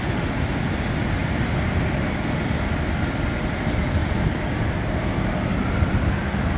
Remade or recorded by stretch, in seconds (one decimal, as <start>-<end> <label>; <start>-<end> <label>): 0.0-1.2 recorded; 1.2-2.8 remade; 2.8-4.0 recorded; 4.0-5.0 remade; 5.0-5.5 recorded; 5.5-6.1 remade; 6.1-6.6 recorded